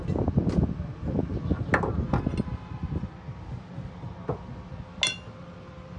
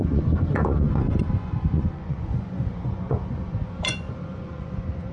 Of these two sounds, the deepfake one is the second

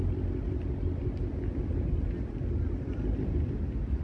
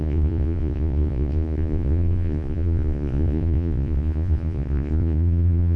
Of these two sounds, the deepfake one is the second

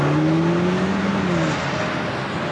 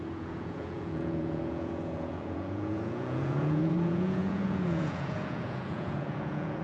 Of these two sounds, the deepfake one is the second